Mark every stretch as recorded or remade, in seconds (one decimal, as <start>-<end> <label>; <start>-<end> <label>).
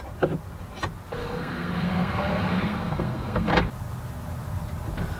0.0-1.2 recorded; 1.2-3.5 remade; 3.5-5.2 recorded